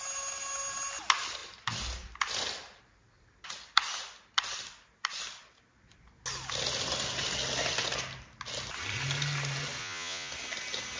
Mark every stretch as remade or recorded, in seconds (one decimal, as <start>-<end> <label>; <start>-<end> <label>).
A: 0.0-9.8 recorded; 9.8-10.3 remade; 10.3-11.0 recorded